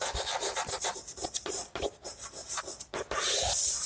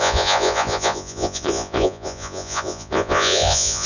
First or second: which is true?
first